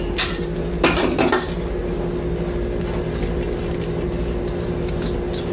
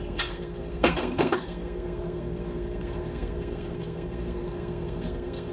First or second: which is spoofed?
second